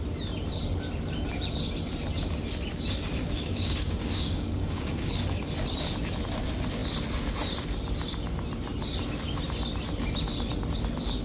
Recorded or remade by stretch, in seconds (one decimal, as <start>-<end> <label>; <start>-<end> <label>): 0.0-3.2 recorded; 3.2-5.1 remade; 5.1-11.2 recorded